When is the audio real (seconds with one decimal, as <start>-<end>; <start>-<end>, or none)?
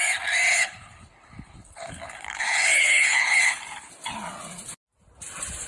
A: 0.0-0.5; 3.9-5.7